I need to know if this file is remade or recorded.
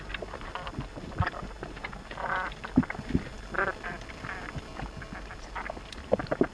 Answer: recorded